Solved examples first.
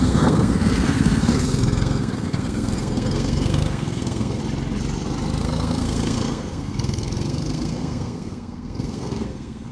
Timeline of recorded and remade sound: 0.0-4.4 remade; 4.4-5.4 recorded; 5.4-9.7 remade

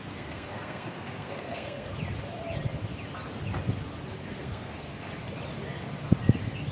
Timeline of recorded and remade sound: 0.0-1.9 remade; 1.9-4.3 recorded; 4.3-5.1 remade; 5.1-6.7 recorded

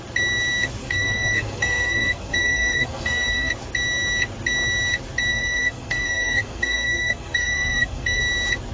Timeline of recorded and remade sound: 0.0-0.8 recorded; 0.8-3.5 remade; 3.5-5.3 recorded; 5.3-8.2 remade; 8.2-8.7 recorded